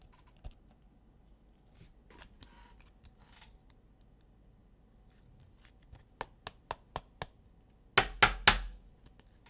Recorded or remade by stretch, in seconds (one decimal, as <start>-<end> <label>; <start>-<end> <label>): 0.0-9.5 recorded